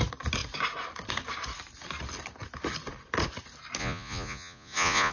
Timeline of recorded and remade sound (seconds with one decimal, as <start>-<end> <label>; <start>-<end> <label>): 0.0-3.8 recorded; 3.8-5.1 remade